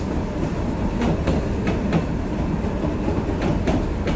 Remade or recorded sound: recorded